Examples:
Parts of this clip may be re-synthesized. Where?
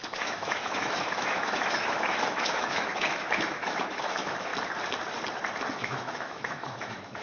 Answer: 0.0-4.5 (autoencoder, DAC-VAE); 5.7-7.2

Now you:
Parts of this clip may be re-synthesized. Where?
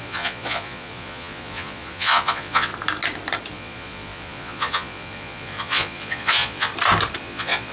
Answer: 0.0-2.7 (vocoder, Vocos); 3.5-6.7; 7.2-7.7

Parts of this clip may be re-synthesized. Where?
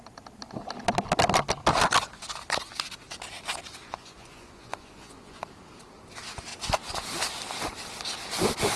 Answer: 3.8-5.4 (vocoder, Vocos)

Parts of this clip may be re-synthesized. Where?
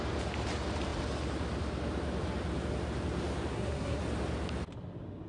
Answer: 3.5-4.0 (codec, SNAC)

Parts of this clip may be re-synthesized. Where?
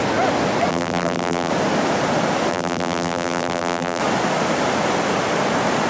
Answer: 0.7-1.5 (vocoder, BigVGAN v2); 2.5-4.0